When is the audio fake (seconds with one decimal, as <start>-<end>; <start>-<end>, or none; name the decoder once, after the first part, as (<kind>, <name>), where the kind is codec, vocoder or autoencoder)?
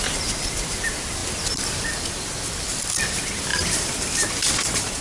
none